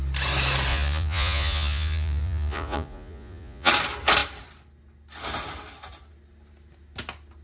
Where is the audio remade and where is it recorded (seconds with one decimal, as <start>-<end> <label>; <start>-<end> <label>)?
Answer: 0.0-0.7 recorded; 0.7-3.7 remade; 3.7-7.4 recorded